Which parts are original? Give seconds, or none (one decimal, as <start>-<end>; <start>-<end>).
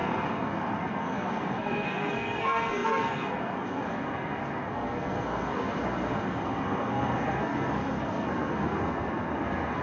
none